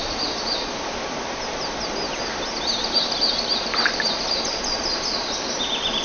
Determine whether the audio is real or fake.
fake